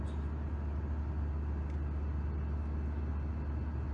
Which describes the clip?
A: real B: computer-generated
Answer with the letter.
A